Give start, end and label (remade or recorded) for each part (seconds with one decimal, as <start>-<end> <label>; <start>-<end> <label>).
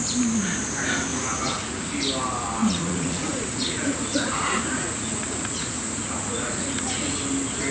0.0-1.1 recorded; 1.1-1.8 remade; 1.8-2.6 recorded; 2.6-7.2 remade; 7.2-7.7 recorded